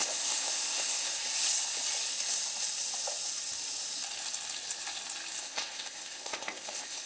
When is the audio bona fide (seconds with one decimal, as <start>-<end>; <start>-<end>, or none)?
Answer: 1.1-5.4